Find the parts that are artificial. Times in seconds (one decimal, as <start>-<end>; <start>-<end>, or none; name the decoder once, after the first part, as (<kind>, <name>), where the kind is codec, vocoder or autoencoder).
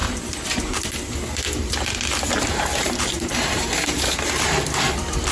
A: 0.0-0.9 (vocoder, BigVGAN v2); 2.7-3.9